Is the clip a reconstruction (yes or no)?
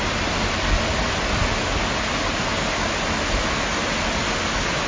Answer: no